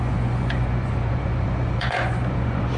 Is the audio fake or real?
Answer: fake